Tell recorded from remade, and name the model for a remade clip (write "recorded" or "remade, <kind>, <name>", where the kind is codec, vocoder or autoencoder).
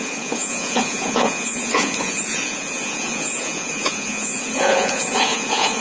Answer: remade, vocoder, Vocos